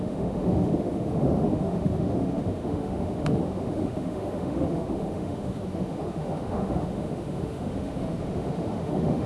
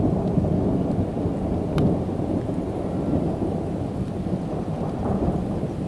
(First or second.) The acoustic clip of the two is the second